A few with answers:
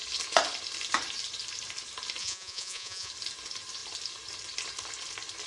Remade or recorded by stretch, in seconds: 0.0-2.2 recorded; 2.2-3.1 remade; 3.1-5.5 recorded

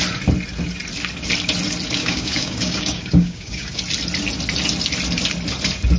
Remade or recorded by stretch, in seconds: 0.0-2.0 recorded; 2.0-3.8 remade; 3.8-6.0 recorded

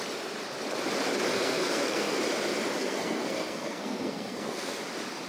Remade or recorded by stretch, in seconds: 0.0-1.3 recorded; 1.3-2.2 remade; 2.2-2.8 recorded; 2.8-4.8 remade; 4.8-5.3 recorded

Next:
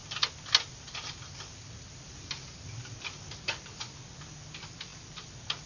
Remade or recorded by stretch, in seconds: 0.0-5.7 recorded